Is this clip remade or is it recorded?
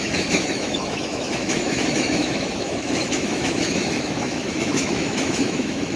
remade